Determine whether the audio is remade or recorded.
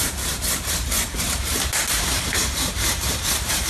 remade